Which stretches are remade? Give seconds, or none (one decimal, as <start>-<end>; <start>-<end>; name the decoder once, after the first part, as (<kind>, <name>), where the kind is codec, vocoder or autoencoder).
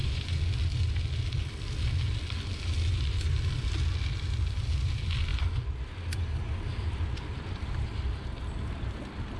0.0-0.5 (vocoder, Vocos)